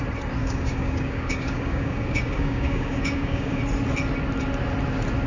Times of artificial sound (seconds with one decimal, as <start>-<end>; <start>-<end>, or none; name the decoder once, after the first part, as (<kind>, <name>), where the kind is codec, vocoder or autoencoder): 0.4-3.6 (codec, DAC)